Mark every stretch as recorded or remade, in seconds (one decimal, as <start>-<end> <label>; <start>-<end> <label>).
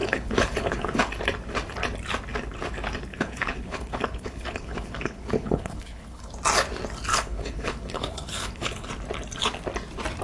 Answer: 0.0-1.0 remade; 1.0-3.1 recorded; 3.1-6.3 remade; 6.3-7.1 recorded; 7.1-8.9 remade; 8.9-10.2 recorded